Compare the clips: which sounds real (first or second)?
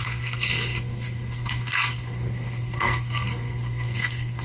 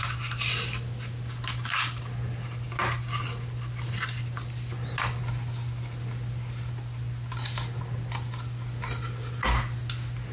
second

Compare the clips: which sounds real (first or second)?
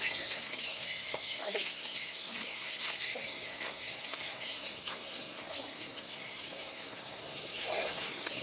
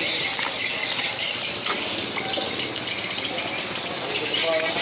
second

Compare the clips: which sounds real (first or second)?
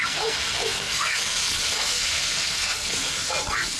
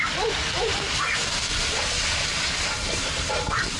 second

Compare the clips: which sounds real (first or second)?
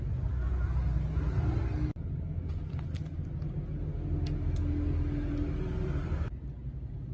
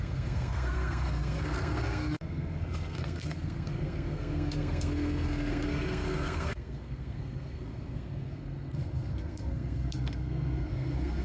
first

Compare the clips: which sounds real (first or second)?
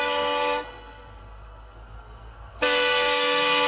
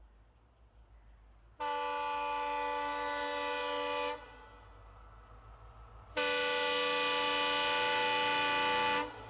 second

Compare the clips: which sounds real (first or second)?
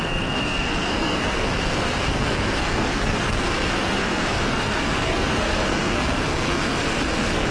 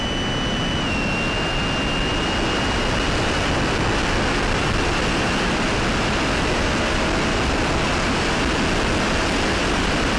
second